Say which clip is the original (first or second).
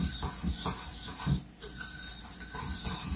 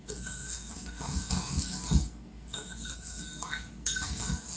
first